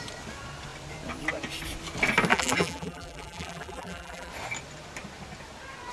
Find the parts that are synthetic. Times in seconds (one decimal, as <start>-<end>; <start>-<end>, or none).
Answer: 2.3-4.3

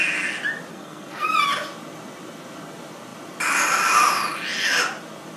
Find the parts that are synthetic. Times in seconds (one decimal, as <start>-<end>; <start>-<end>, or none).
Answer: 0.7-1.3

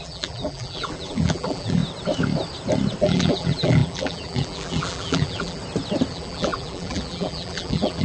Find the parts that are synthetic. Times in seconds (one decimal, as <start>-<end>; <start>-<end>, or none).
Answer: 0.0-1.8; 3.0-5.6; 6.1-8.0

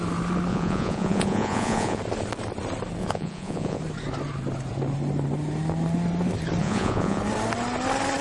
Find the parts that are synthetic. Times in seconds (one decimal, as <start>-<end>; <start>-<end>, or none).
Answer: 0.5-2.0; 3.0-3.8; 6.6-7.2

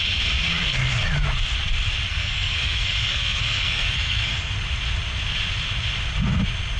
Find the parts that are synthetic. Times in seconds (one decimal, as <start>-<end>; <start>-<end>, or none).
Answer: 2.1-4.5